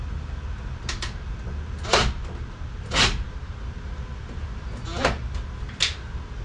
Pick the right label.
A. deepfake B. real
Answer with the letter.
B